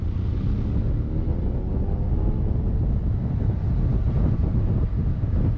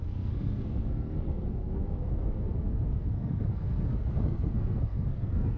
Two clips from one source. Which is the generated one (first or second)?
second